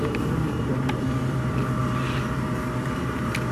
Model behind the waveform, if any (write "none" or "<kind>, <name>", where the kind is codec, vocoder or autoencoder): vocoder, BigVGAN v2